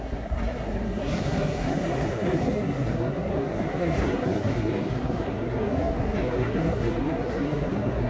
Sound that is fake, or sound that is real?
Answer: fake